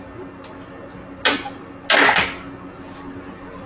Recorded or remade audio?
recorded